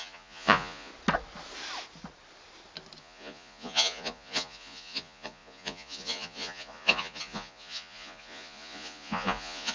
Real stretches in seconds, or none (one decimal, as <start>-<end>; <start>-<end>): 0.9-3.0